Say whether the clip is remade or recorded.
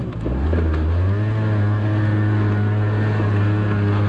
recorded